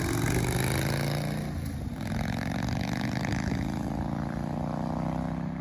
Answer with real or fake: real